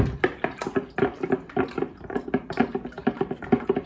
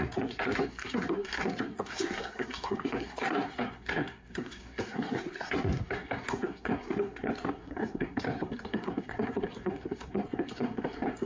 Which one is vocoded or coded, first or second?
second